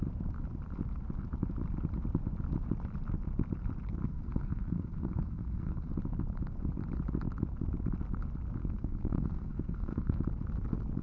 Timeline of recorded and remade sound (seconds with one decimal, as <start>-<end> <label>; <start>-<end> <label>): 0.0-4.0 recorded; 4.0-5.9 remade; 5.9-8.6 recorded; 8.6-10.2 remade; 10.2-11.0 recorded